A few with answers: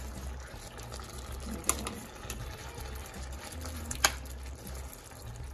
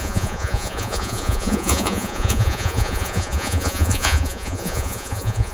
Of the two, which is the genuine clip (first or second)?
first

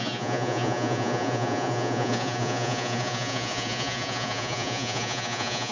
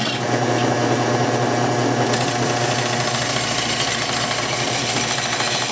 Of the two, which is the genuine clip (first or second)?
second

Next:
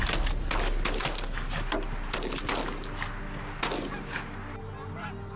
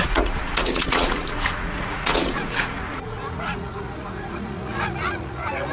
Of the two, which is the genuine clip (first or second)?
first